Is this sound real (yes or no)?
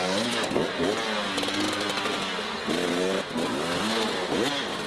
yes